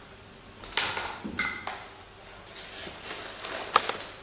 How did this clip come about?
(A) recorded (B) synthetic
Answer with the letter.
A